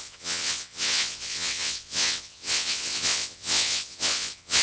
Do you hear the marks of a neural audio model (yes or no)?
yes